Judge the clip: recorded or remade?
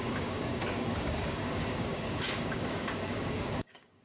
remade